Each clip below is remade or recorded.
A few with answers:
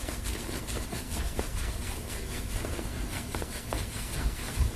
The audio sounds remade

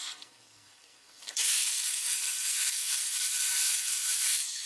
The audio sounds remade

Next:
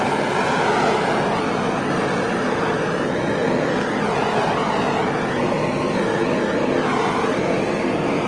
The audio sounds recorded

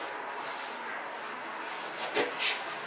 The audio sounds recorded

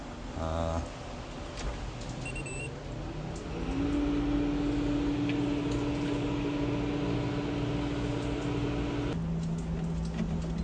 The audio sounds recorded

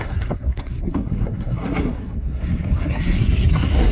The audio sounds remade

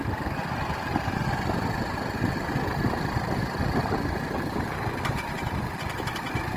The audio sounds recorded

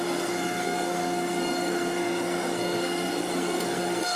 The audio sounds remade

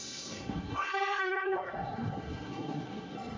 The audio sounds remade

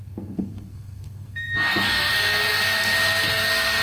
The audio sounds remade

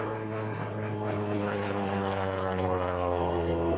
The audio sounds remade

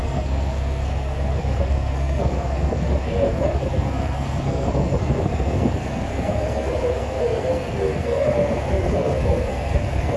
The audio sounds remade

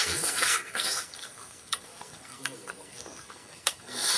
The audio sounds remade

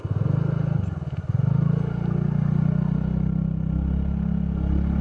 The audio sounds recorded